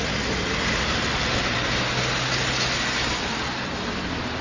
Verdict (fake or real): real